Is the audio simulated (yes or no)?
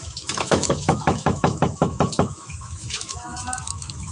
yes